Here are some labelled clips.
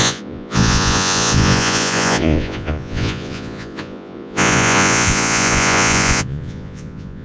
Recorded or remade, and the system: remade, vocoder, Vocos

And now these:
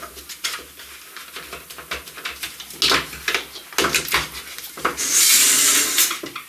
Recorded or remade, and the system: recorded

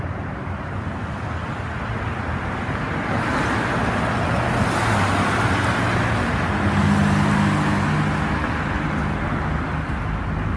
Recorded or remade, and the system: recorded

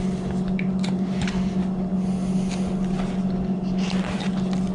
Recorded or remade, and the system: recorded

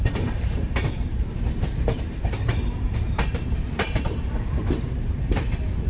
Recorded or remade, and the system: remade, vocoder, BigVGAN v2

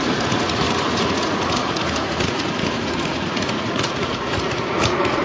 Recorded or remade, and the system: remade, vocoder, Vocos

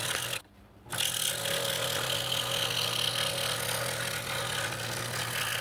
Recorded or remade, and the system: recorded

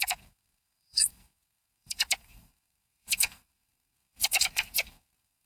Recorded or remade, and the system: remade, codec, SNAC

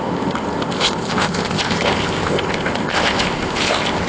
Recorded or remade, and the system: remade, codec, ZipCodec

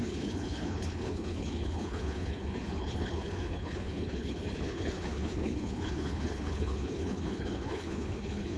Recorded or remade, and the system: remade, codec, HILCodec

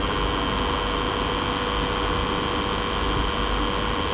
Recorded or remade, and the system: recorded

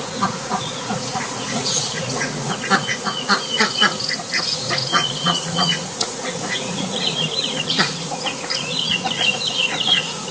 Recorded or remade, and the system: remade, vocoder, Vocos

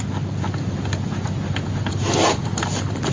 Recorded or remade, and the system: recorded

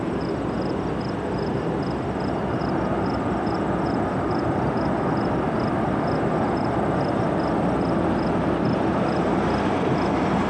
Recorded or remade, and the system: recorded